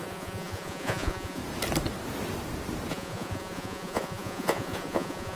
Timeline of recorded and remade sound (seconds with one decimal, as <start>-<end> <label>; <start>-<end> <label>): 0.0-1.4 remade; 1.4-2.9 recorded; 2.9-5.4 remade